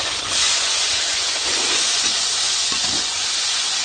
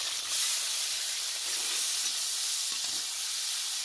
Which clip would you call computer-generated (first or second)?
first